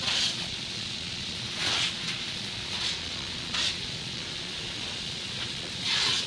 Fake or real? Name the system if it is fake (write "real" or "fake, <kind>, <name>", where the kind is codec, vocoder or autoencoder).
fake, vocoder, Vocos